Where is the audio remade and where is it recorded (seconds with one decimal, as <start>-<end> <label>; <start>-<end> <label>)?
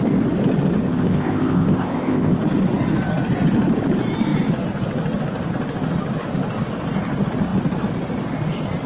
0.0-0.8 recorded; 0.8-2.4 remade; 2.4-8.9 recorded